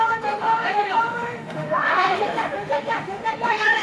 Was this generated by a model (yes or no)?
yes